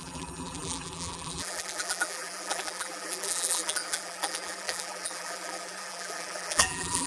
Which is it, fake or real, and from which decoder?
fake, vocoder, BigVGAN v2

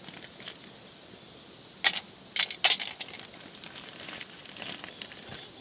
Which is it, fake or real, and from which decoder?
real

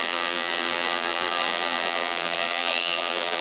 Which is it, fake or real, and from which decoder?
fake, vocoder, BigVGAN v2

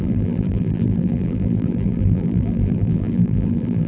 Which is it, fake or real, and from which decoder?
fake, vocoder, BigVGAN v2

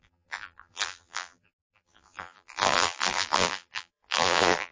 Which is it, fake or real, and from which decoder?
fake, vocoder, BigVGAN v2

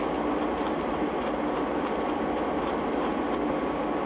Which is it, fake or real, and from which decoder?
real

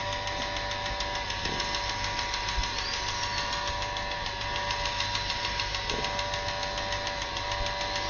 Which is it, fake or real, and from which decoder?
real